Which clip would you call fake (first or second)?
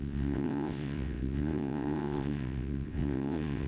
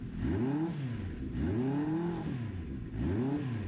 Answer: first